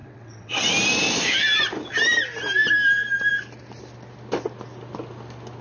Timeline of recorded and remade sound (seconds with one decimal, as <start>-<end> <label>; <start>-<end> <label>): 0.0-0.7 remade; 0.7-5.6 recorded